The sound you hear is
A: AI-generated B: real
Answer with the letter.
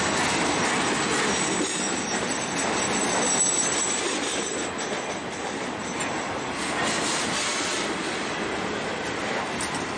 B